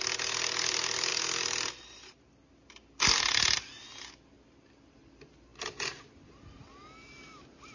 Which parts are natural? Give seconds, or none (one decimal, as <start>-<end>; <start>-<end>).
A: 0.0-7.7